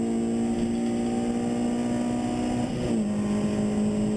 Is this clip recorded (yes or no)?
yes